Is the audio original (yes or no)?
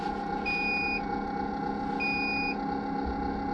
yes